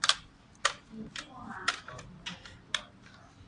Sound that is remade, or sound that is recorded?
recorded